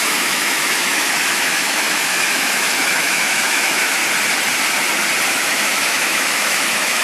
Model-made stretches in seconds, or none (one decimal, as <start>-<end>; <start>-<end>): 0.0-4.0; 5.3-7.0